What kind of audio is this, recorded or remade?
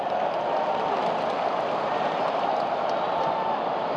recorded